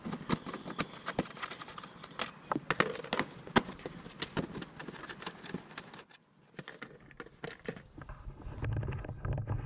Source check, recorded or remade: recorded